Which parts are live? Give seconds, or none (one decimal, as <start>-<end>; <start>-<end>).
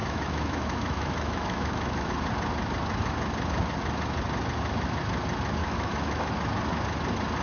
2.1-5.6; 6.3-7.4